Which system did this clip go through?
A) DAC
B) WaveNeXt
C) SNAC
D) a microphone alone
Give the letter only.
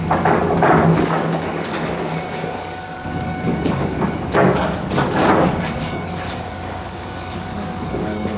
A